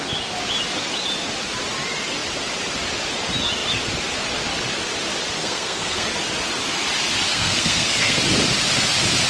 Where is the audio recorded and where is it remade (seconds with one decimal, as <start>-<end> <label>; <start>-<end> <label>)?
0.0-5.4 recorded; 5.4-6.1 remade; 6.1-7.3 recorded; 7.3-8.2 remade; 8.2-9.3 recorded